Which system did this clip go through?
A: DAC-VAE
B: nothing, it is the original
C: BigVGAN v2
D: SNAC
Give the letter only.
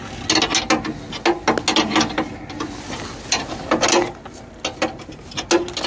B